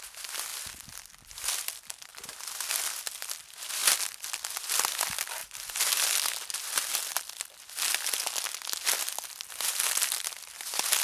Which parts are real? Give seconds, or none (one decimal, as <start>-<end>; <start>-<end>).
0.0-11.0